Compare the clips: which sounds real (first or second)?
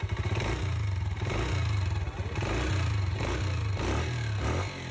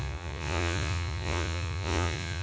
first